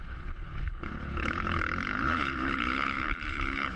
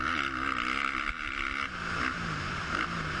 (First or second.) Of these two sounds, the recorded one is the second